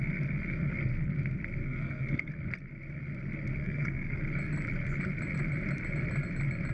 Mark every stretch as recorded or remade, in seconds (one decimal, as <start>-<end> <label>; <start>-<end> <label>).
0.0-1.6 recorded; 1.6-2.3 remade; 2.3-3.6 recorded; 3.6-4.2 remade; 4.2-6.7 recorded